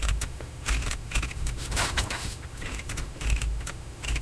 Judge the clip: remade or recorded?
remade